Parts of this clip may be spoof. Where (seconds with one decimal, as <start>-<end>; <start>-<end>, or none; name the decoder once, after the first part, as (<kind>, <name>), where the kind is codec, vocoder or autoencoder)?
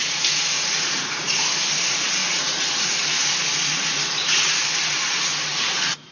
0.0-6.1 (vocoder, Vocos)